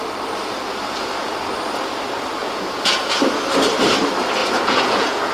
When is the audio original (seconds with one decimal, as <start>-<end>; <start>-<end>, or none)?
0.0-2.4; 3.2-4.4